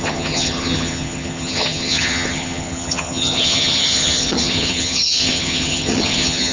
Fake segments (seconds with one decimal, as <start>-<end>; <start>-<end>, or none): 0.0-6.5